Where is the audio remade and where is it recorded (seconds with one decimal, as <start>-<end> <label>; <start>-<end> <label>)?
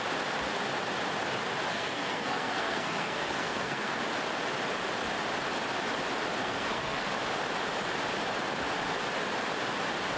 0.0-1.7 recorded; 1.7-4.0 remade; 4.0-6.4 recorded; 6.4-7.1 remade; 7.1-10.2 recorded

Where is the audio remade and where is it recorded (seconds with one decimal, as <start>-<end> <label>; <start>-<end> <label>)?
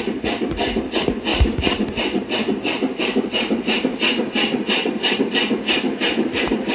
0.0-1.3 recorded; 1.3-5.3 remade; 5.3-6.7 recorded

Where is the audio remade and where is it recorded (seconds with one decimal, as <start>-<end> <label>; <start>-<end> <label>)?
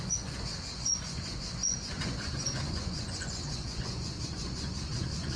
0.0-5.4 remade